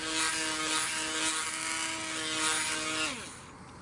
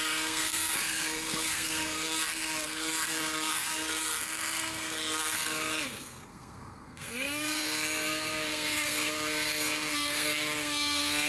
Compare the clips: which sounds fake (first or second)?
second